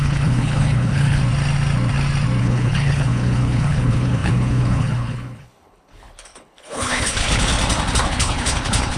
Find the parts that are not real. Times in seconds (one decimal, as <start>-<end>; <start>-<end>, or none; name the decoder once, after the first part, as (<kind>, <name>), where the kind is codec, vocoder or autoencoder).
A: 0.0-1.2 (codec, HILCodec); 2.4-7.5; 8.1-9.0